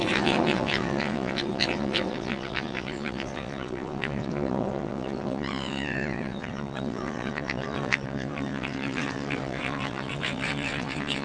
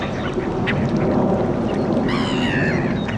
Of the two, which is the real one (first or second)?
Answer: second